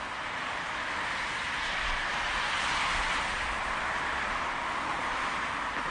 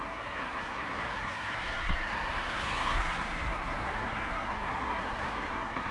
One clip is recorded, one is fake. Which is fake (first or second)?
second